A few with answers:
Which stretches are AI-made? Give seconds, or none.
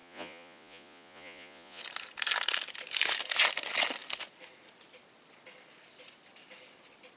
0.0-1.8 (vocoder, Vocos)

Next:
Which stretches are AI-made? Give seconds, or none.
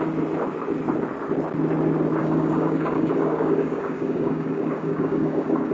2.2-5.7 (codec, DAC)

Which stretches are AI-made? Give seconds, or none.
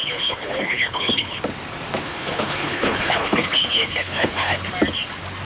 0.0-1.4 (codec, HILCodec); 2.0-4.7